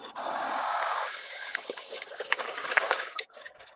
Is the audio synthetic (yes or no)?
yes